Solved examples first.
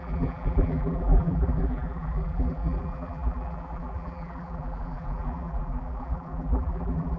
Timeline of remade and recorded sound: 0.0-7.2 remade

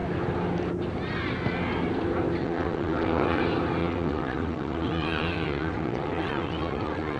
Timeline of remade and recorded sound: 0.0-2.4 recorded; 2.4-3.4 remade; 3.4-3.8 recorded; 3.8-7.2 remade

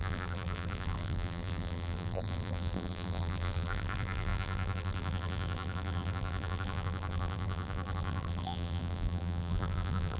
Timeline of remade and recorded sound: 0.0-10.2 remade